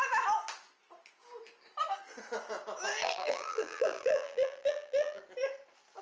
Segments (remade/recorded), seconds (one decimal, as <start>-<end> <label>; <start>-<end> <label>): 0.0-3.0 recorded; 3.0-5.2 remade; 5.2-6.0 recorded